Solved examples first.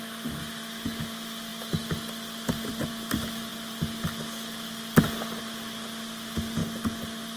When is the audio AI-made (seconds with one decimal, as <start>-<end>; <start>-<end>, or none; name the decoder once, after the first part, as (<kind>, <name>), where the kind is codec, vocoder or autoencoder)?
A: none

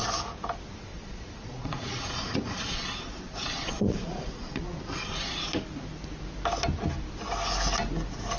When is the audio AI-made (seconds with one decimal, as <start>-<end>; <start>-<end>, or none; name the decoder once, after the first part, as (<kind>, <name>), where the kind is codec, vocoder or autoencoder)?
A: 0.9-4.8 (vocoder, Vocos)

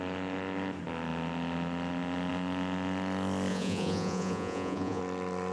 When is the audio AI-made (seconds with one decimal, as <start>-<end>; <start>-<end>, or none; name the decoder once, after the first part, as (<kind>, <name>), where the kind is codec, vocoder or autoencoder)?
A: 3.5-5.0 (vocoder, Vocos)

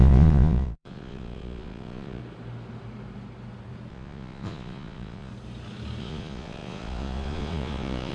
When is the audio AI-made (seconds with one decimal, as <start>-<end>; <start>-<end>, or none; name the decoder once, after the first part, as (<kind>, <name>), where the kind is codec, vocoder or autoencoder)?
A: 0.0-2.2 (vocoder, Vocos); 3.9-5.3; 6.0-8.1

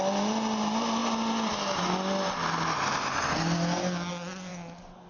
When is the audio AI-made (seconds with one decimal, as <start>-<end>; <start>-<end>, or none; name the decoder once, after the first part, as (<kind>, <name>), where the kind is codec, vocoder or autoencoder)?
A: none

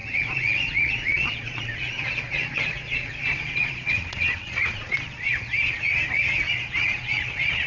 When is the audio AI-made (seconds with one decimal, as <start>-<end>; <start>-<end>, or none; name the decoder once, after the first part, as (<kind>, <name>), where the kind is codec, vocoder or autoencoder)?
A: 0.0-5.5 (vocoder, Vocos); 6.5-7.7

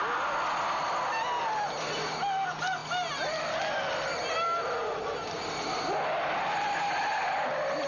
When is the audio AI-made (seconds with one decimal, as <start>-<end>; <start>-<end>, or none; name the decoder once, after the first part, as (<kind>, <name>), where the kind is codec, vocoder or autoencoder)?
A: none